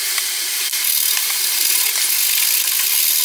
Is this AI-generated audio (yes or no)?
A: no